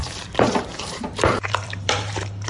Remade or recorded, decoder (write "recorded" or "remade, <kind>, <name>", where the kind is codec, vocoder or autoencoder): remade, vocoder, BigVGAN v2